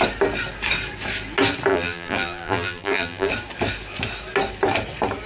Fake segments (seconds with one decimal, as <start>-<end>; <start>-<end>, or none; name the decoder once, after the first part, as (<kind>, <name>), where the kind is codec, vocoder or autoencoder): 1.7-3.3 (vocoder, BigVGAN v2)